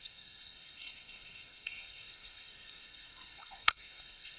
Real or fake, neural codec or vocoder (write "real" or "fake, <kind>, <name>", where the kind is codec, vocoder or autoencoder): fake, codec, SNAC